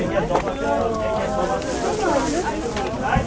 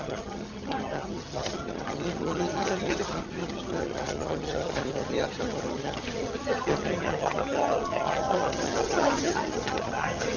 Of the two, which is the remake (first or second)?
second